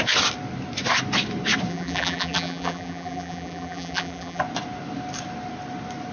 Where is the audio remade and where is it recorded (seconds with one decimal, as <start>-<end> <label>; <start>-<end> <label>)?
0.0-1.7 recorded; 1.7-4.4 remade; 4.4-6.1 recorded